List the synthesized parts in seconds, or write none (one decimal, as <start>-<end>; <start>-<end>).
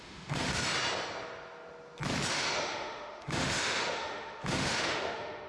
0.0-0.6; 2.3-5.5